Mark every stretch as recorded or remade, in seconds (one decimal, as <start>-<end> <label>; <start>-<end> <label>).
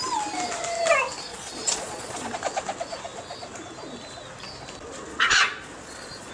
0.0-1.3 recorded; 1.3-2.3 remade; 2.3-5.1 recorded; 5.1-6.3 remade